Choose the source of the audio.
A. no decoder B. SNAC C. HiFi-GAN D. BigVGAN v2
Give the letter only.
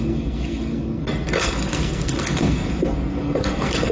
B